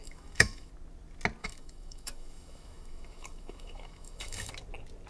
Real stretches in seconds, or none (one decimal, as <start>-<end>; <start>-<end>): 0.7-1.4; 4.5-5.1